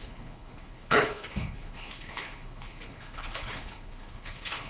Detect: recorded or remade remade